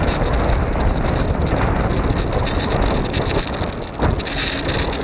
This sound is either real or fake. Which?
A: real